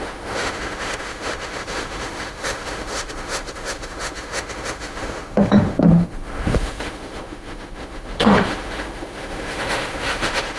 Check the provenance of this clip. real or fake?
fake